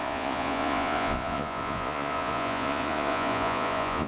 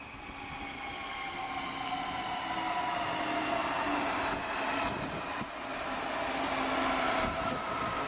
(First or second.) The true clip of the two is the second